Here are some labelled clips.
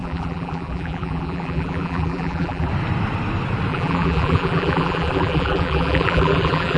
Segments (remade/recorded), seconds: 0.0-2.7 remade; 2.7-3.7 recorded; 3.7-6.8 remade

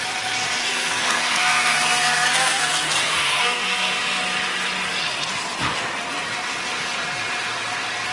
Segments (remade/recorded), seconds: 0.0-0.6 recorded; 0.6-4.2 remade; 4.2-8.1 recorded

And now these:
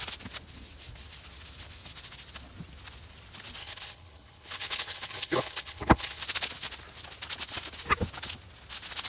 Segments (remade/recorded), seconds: 0.0-3.6 recorded; 3.6-6.2 remade; 6.2-9.1 recorded

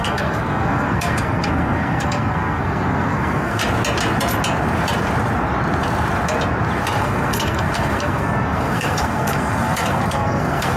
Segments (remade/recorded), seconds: 0.0-3.6 remade; 3.6-7.0 recorded; 7.0-10.8 remade

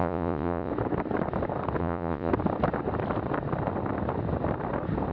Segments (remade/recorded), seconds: 0.0-0.7 remade; 0.7-1.8 recorded; 1.8-2.3 remade; 2.3-5.1 recorded